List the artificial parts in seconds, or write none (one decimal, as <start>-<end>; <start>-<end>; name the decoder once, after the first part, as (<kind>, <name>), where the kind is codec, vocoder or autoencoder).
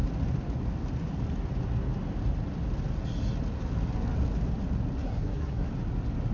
5.0-5.7 (codec, SNAC)